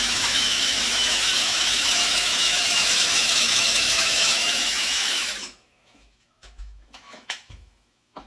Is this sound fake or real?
fake